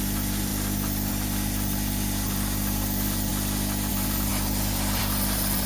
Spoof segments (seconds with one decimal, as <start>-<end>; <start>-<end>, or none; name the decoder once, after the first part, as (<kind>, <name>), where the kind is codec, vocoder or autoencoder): 0.0-0.5 (vocoder, BigVGAN v2); 1.1-3.3; 3.9-5.7